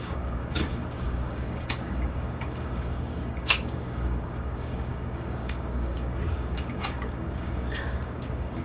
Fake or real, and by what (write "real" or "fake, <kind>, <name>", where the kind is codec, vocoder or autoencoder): fake, codec, DAC